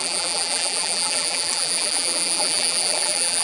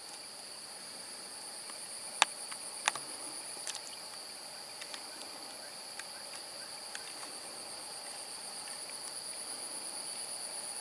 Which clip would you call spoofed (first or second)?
first